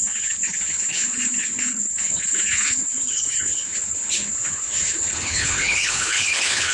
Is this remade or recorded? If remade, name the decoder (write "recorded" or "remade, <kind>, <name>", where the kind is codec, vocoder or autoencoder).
remade, codec, HILCodec